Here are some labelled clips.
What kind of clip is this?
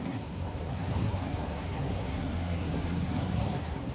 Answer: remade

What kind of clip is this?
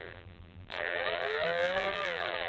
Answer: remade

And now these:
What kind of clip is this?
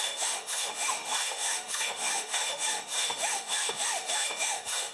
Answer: remade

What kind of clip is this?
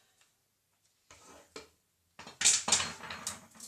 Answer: recorded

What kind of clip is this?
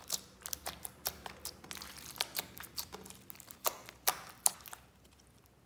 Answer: recorded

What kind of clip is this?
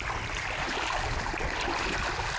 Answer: recorded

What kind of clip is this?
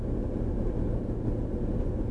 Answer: recorded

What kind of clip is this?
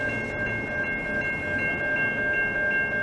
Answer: recorded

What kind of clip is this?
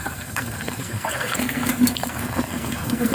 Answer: remade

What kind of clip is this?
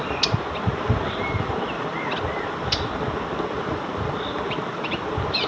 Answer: recorded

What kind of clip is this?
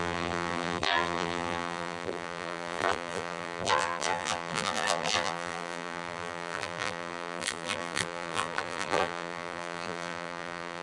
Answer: remade